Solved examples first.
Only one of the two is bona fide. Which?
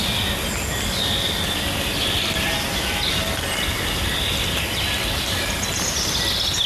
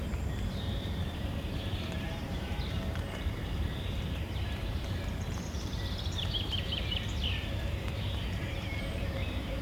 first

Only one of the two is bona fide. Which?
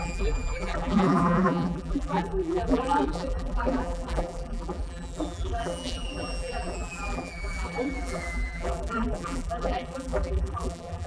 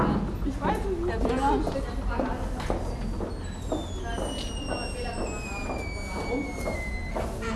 second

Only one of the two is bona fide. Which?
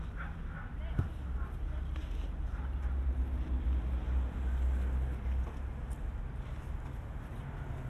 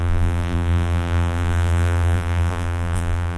first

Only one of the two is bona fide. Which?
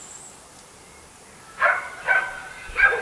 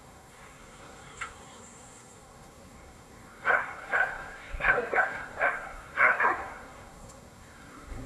first